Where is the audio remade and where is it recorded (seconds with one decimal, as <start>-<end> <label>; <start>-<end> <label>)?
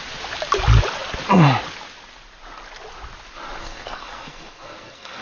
0.0-3.6 recorded; 3.6-5.2 remade